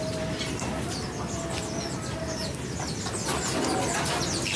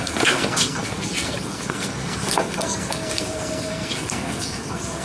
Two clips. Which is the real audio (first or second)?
first